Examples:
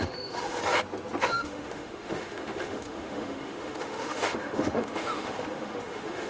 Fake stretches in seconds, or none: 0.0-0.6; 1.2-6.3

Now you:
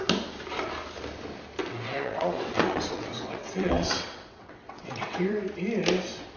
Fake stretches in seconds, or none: 1.6-5.4

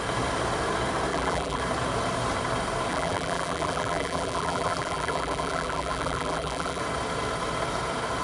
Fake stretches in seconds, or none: 1.1-1.6; 2.9-6.8

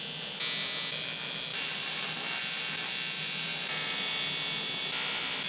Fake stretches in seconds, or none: none

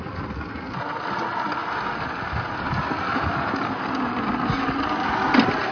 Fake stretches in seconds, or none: none

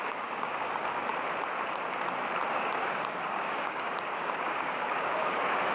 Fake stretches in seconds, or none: 0.0-1.1; 2.5-5.7

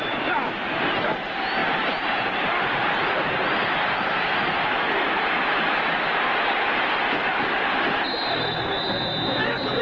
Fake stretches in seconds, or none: none